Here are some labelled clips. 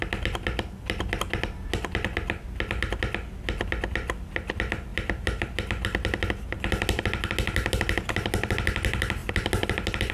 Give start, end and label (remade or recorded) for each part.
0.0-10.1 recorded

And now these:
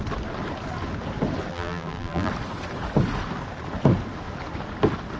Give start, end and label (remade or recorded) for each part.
0.0-1.5 recorded; 1.5-2.3 remade; 2.3-5.2 recorded

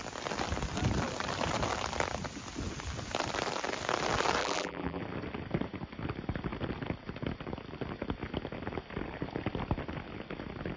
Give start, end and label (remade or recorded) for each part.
0.0-4.4 recorded; 4.4-5.0 remade; 5.0-10.8 recorded